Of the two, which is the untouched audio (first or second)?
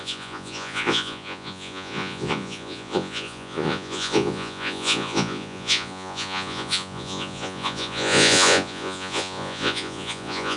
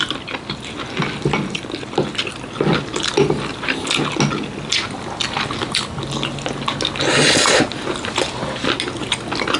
second